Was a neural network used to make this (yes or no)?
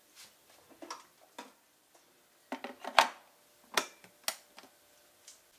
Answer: no